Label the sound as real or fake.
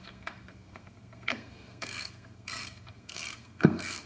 fake